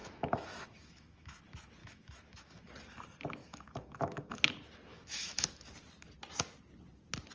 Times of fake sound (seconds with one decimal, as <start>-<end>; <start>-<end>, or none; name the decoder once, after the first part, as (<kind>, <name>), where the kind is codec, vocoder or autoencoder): 0.0-1.4 (autoencoder, DAC-VAE); 1.8-2.7; 3.4-4.4; 4.9-5.7